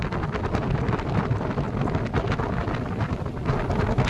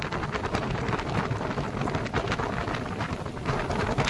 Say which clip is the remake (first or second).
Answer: second